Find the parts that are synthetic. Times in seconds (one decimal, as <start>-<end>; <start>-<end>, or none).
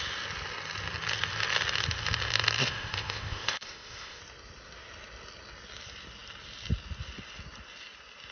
2.6-4.2